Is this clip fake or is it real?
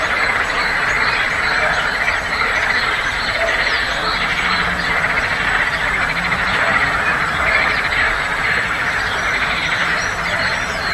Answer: fake